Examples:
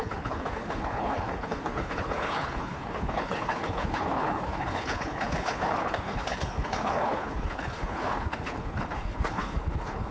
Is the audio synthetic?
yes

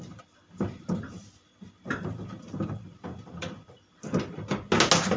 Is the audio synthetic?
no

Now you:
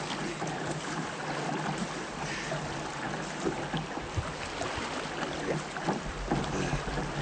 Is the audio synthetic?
no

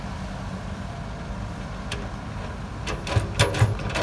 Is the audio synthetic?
no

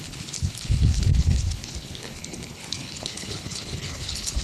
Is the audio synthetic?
yes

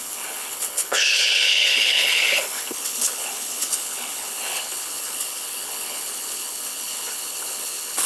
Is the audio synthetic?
yes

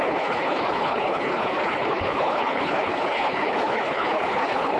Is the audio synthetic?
yes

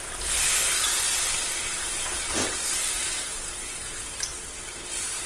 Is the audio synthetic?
no